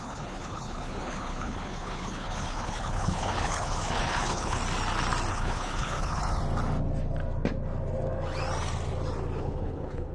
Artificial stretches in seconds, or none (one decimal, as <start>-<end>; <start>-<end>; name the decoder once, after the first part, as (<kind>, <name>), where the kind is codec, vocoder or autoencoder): 0.0-4.6 (codec, HILCodec); 5.3-6.4; 9.4-10.1